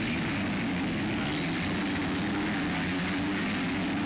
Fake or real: real